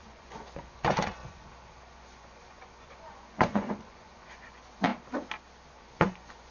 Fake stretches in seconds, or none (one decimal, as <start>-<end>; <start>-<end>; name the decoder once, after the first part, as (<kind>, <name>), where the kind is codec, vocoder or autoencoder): 0.0-4.9 (vocoder, Vocos); 5.8-6.5